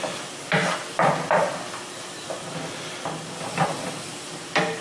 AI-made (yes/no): no